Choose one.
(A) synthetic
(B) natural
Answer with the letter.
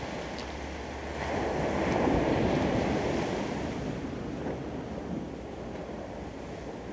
B